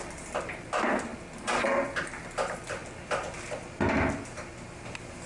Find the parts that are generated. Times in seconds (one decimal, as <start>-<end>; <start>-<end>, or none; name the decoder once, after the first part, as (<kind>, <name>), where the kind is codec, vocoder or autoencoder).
none